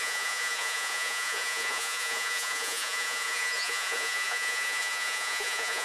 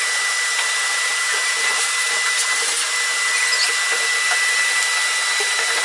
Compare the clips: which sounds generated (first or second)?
first